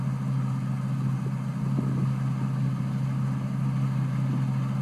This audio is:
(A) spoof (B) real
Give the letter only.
B